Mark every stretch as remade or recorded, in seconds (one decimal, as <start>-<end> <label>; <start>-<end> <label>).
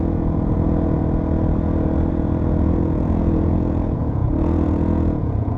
0.0-1.0 remade; 1.0-2.1 recorded; 2.1-5.6 remade